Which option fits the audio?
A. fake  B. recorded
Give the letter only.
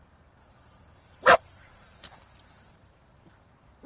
A